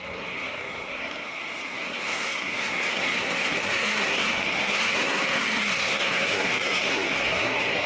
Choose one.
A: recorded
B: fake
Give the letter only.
B